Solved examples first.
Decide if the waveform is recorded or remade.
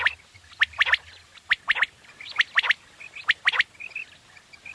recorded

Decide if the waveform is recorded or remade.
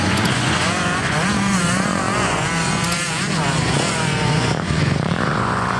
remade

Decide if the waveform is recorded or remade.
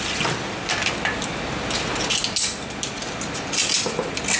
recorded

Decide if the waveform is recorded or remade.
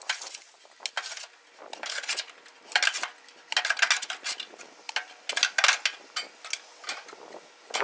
recorded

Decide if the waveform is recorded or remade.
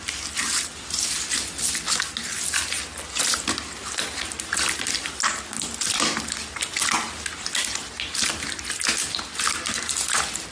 recorded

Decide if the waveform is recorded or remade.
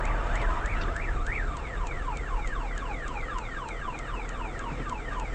recorded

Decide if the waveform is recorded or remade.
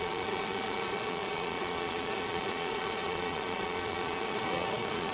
remade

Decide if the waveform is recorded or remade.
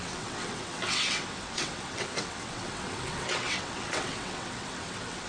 remade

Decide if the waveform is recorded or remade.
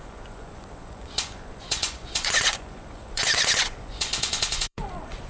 remade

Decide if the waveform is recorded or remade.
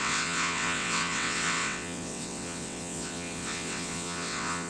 remade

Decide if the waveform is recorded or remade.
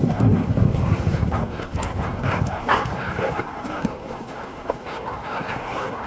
remade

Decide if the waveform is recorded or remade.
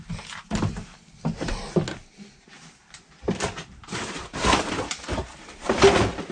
recorded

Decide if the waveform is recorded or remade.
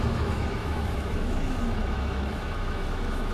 remade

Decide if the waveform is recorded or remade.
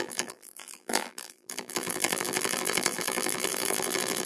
remade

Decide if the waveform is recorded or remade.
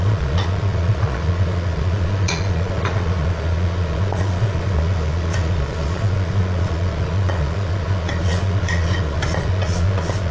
remade